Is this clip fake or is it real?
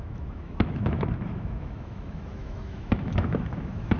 fake